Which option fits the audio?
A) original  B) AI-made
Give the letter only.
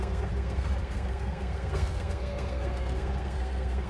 B